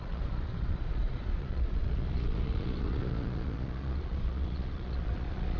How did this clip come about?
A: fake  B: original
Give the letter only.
A